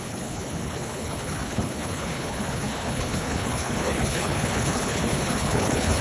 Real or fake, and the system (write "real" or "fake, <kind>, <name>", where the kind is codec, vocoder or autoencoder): fake, codec, HILCodec